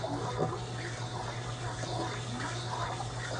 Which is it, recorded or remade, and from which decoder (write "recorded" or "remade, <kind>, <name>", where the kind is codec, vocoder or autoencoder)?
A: recorded